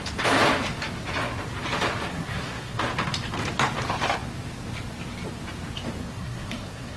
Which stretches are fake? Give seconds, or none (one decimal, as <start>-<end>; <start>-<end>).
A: 2.1-2.8; 6.0-7.0